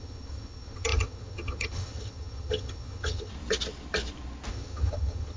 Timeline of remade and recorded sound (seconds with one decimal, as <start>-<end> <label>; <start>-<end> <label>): 0.0-3.3 remade; 3.3-4.5 recorded; 4.5-5.4 remade